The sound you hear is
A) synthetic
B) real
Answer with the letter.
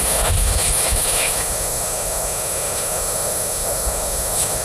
A